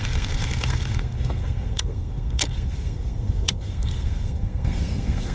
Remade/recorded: remade